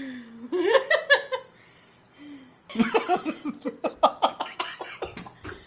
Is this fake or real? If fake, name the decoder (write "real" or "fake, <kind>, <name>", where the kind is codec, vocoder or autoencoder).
real